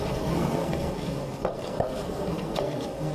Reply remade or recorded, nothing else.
remade